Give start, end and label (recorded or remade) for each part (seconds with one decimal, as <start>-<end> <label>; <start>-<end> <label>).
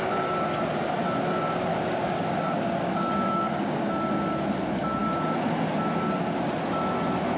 0.0-1.7 recorded; 1.7-3.9 remade; 3.9-7.4 recorded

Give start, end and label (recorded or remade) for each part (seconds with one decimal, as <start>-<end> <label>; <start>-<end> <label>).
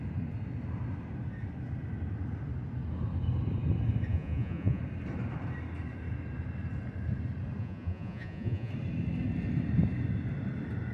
0.0-4.1 recorded; 4.1-4.8 remade; 4.8-7.6 recorded; 7.6-8.7 remade; 8.7-10.9 recorded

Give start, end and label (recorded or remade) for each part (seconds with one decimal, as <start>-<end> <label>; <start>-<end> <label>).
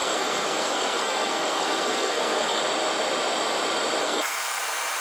0.0-2.6 remade; 2.6-4.0 recorded; 4.0-4.6 remade; 4.6-5.0 recorded